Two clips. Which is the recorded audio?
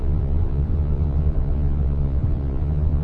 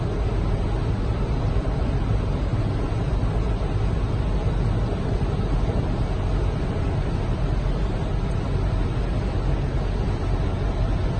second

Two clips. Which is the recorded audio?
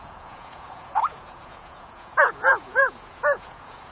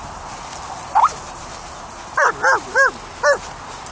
second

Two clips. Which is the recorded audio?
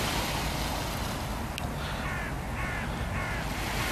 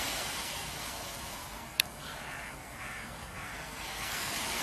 first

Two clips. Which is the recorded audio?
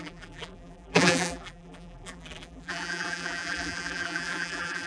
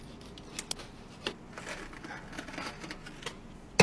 second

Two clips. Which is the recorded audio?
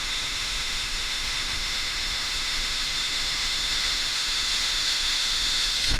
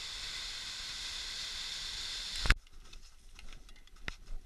second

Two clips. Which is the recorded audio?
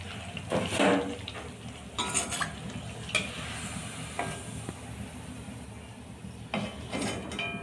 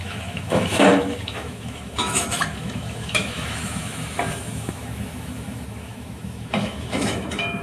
first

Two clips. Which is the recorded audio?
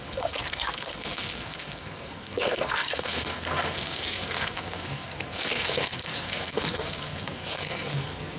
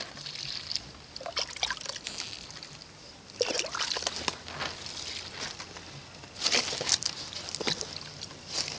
second